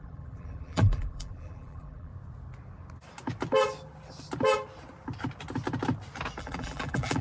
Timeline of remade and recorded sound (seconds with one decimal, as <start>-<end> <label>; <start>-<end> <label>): 0.0-2.1 remade; 2.1-6.4 recorded; 6.4-7.2 remade